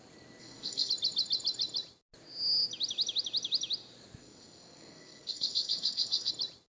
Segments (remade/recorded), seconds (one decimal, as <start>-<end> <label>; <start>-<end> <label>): 0.0-0.4 recorded; 0.4-0.9 remade; 0.9-4.2 recorded; 4.2-6.3 remade; 6.3-6.7 recorded